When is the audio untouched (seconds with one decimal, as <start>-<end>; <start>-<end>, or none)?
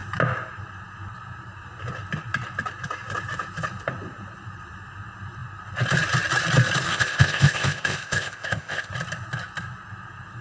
0.0-6.9; 8.9-10.4